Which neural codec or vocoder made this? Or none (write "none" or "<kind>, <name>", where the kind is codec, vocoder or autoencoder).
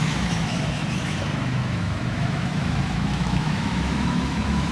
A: autoencoder, DAC-VAE